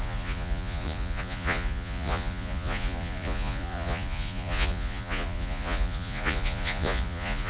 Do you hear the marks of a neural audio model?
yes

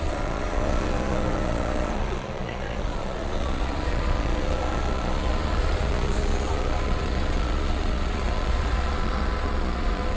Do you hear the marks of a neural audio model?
yes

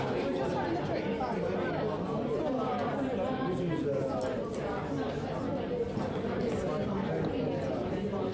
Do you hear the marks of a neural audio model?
no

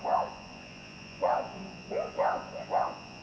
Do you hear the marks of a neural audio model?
yes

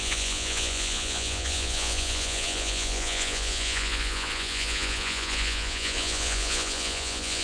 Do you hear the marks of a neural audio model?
yes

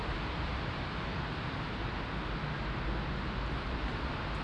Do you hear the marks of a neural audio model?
no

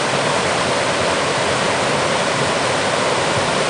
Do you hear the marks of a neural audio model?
no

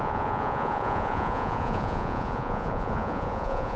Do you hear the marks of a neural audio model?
yes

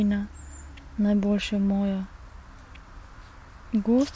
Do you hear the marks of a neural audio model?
no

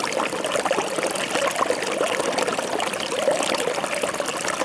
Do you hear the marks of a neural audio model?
no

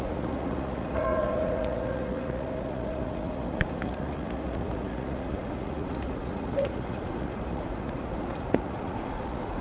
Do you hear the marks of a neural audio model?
yes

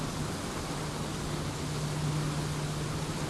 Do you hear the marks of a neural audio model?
no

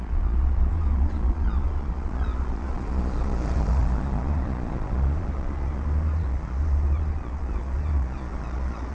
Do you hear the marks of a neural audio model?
yes